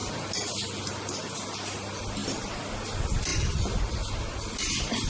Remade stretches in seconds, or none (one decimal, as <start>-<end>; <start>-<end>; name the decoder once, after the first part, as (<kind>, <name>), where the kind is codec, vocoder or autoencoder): none